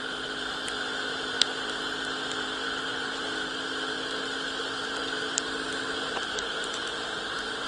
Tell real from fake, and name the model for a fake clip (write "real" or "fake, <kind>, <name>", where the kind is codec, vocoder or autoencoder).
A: real